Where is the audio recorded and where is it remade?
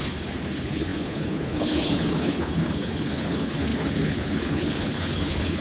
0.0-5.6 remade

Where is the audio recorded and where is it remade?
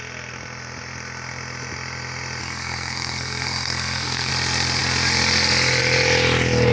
0.0-2.4 recorded; 2.4-4.3 remade; 4.3-6.7 recorded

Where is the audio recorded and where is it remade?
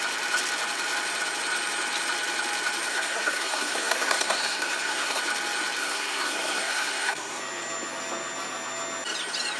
0.0-2.9 recorded; 2.9-5.2 remade; 5.2-5.8 recorded; 5.8-7.4 remade; 7.4-9.6 recorded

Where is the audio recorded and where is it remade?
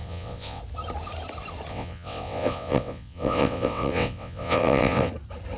0.0-0.6 remade; 0.6-1.7 recorded; 1.7-5.1 remade; 5.1-5.6 recorded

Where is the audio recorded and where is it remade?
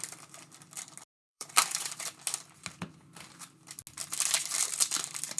0.0-1.1 recorded; 1.1-2.0 remade; 2.0-5.4 recorded